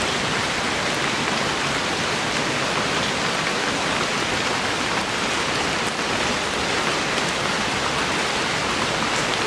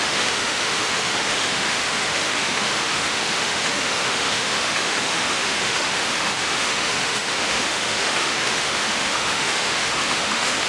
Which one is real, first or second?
first